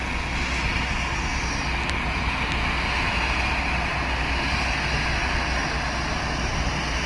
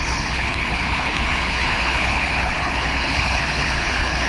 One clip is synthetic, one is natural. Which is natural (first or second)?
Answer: first